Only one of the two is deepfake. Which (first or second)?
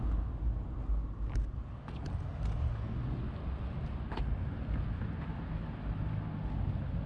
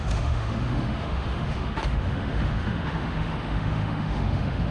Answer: second